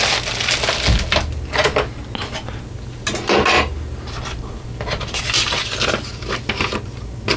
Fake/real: real